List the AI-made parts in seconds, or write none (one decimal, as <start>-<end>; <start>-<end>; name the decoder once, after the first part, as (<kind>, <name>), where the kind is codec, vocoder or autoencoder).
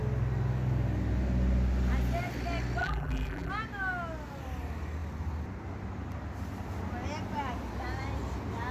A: 2.8-3.5 (vocoder, BigVGAN v2)